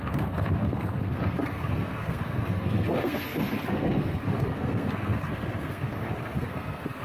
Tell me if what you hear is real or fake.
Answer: fake